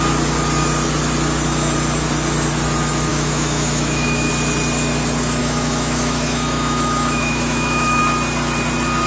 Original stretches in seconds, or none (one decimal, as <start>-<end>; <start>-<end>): 0.0-3.1; 4.3-5.4; 8.0-9.1